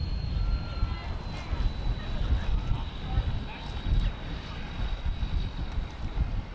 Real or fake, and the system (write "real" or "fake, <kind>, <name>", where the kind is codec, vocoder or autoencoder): real